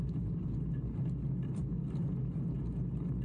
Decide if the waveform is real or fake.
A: real